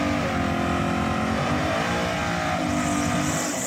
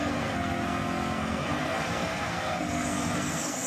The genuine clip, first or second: first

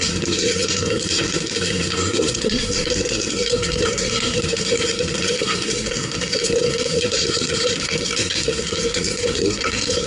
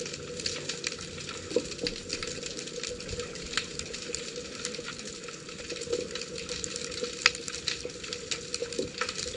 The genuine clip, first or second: second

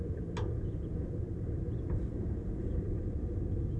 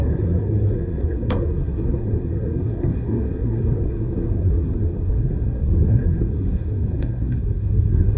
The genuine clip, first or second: first